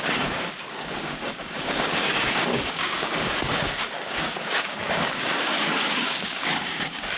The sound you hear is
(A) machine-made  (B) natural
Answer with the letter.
A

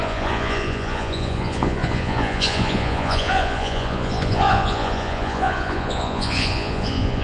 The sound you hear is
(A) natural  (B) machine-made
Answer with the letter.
B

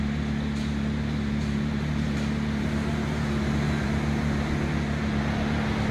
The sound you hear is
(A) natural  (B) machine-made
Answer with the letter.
A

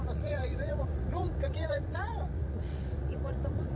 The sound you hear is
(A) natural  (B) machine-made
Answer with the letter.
B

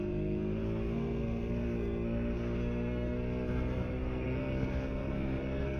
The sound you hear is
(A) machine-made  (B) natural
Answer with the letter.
A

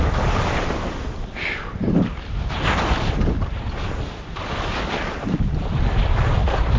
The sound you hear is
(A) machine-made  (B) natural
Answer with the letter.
B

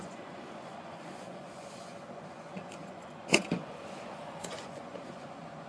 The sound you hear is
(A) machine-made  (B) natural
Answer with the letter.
A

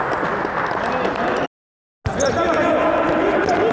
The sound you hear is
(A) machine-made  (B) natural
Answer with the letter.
B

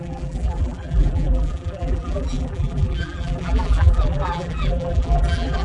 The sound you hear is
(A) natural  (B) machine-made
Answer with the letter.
B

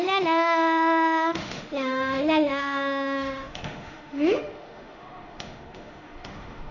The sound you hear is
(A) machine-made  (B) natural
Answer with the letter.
A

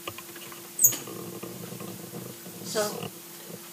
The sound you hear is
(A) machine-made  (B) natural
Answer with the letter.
A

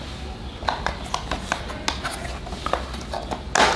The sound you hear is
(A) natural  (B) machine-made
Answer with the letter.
A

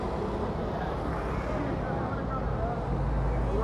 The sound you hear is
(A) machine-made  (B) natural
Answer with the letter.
B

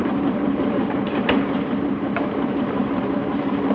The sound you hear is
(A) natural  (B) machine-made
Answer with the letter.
B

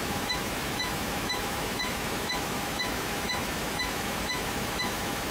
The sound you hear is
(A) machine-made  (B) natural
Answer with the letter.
A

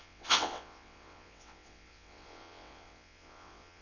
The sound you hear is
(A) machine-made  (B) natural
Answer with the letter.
A